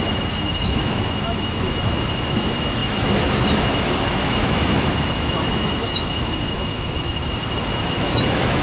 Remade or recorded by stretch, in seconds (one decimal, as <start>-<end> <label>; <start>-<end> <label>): 0.0-8.6 remade